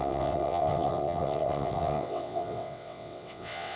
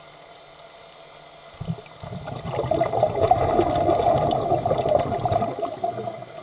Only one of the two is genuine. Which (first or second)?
second